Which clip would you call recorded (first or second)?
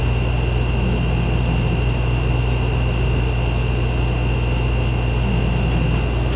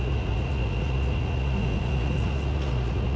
first